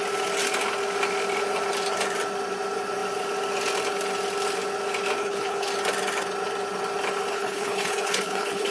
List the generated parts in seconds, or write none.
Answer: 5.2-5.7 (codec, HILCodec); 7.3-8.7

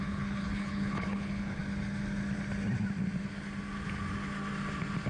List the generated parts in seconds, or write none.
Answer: 0.0-1.6 (codec, HILCodec)